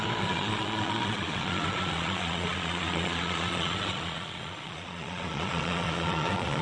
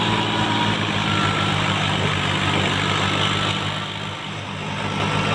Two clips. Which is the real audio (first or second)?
second